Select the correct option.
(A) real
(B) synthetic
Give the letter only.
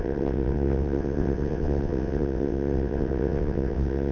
B